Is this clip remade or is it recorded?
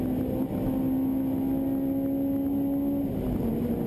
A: recorded